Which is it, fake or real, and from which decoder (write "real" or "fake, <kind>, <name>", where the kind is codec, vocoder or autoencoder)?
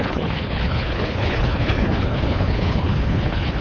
fake, codec, HILCodec